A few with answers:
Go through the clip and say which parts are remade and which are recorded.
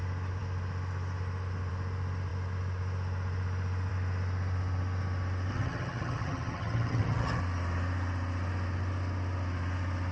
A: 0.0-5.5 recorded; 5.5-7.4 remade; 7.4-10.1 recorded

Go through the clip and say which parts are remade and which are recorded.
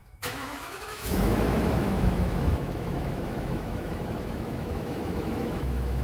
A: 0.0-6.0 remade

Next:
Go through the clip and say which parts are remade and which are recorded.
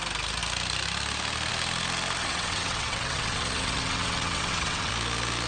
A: 0.0-2.2 recorded; 2.2-4.9 remade; 4.9-5.5 recorded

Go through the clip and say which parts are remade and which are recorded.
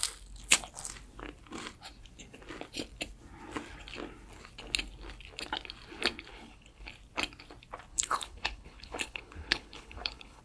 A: 0.0-6.3 recorded; 6.3-6.9 remade; 6.9-7.9 recorded; 7.9-10.4 remade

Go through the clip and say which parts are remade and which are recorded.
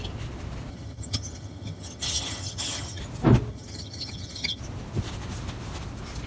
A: 0.0-0.7 recorded; 0.7-3.0 remade; 3.0-3.5 recorded; 3.5-4.6 remade; 4.6-6.3 recorded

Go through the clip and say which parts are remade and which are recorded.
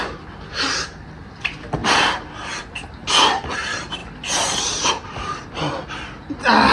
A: 0.0-6.7 recorded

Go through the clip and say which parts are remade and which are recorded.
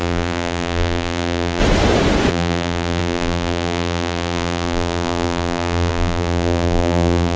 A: 0.0-1.6 remade; 1.6-2.3 recorded; 2.3-7.4 remade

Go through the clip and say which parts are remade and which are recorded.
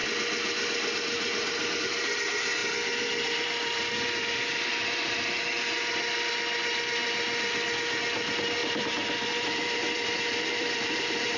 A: 0.0-2.6 recorded; 2.6-4.7 remade; 4.7-8.6 recorded; 8.6-11.4 remade